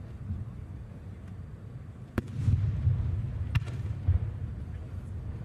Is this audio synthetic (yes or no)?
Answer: no